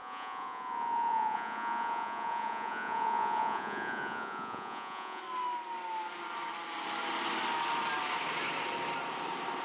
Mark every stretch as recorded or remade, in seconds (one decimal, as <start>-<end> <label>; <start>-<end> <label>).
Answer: 0.0-5.2 remade; 5.2-9.6 recorded